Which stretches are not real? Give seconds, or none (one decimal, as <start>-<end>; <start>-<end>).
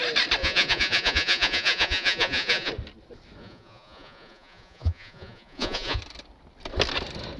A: 0.4-2.7; 3.4-6.0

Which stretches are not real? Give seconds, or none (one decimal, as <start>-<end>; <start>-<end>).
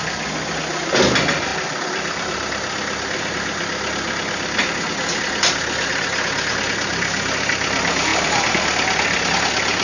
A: none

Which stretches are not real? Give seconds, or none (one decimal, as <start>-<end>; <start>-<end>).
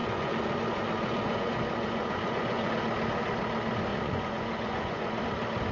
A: 0.0-2.7; 3.9-5.2